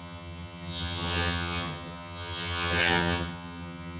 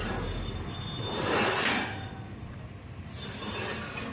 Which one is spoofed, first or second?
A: first